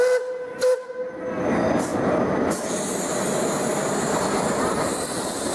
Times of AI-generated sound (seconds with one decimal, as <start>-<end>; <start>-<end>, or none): none